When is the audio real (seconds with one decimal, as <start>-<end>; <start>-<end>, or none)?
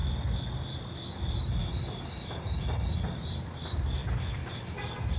0.0-1.2; 4.0-4.5